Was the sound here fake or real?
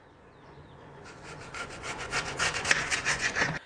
fake